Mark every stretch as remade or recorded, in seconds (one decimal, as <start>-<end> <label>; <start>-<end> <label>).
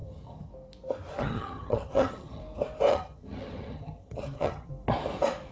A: 0.0-0.5 remade; 0.5-1.2 recorded; 1.2-2.4 remade; 2.4-2.9 recorded; 2.9-4.7 remade; 4.7-5.5 recorded